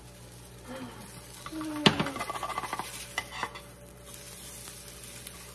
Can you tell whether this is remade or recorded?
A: recorded